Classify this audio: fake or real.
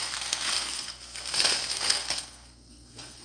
fake